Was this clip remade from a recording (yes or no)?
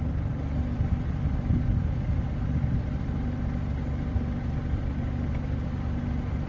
no